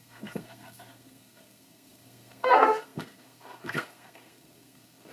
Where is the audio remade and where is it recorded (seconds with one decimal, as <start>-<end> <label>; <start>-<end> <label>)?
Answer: 0.0-5.1 remade